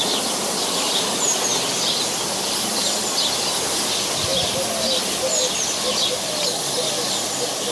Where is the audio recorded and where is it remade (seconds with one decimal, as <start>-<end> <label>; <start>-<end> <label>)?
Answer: 0.0-7.7 recorded